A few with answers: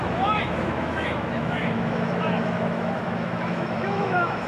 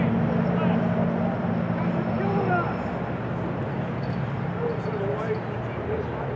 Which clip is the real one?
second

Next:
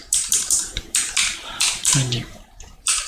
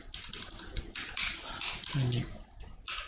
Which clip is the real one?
second